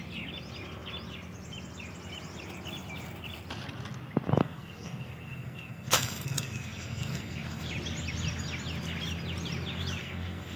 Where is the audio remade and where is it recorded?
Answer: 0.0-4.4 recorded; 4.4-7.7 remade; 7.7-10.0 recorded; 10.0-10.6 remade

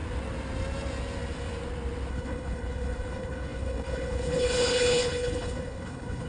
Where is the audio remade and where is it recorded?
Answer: 0.0-2.1 recorded; 2.1-6.3 remade

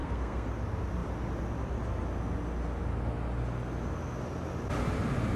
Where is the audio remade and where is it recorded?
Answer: 0.0-0.5 remade; 0.5-5.4 recorded

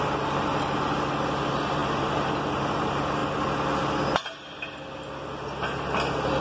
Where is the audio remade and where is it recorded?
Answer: 0.0-6.4 recorded

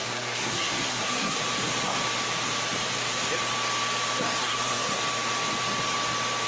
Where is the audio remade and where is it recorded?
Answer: 0.0-1.4 remade; 1.4-4.4 recorded; 4.4-5.0 remade; 5.0-6.5 recorded